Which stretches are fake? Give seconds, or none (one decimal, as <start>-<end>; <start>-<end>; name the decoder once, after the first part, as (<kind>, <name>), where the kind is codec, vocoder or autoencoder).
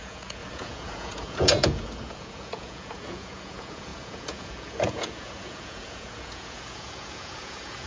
0.0-7.9 (vocoder, Vocos)